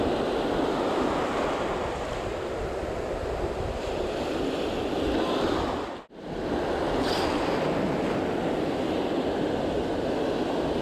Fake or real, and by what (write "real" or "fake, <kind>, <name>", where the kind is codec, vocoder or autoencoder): real